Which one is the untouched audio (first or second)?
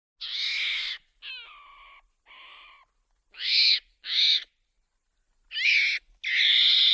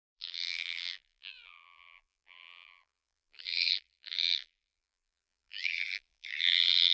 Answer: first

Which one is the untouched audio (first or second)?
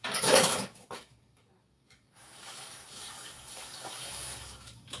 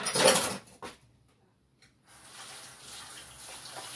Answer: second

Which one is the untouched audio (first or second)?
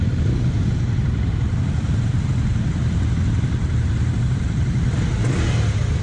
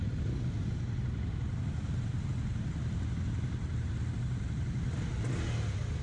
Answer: second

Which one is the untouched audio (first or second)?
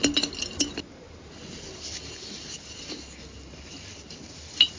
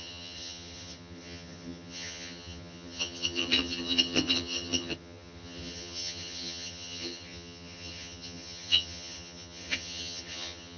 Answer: first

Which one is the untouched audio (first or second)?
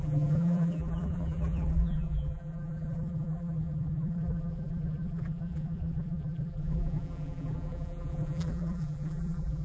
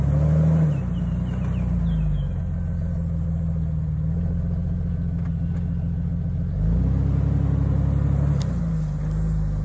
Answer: second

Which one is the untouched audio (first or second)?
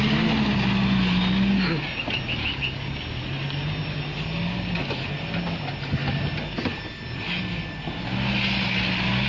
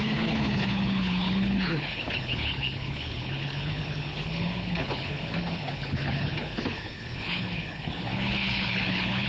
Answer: first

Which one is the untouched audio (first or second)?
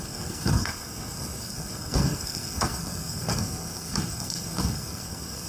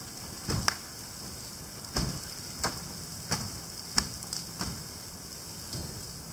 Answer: second